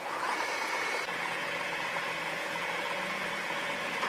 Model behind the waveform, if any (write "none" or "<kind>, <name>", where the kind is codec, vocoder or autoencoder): vocoder, Vocos